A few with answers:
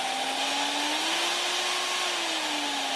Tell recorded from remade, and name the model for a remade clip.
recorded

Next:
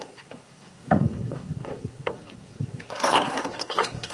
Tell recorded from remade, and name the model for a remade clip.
remade, codec, SNAC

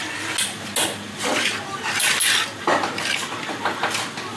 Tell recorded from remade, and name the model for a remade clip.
recorded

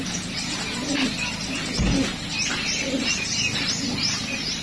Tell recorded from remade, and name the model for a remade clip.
recorded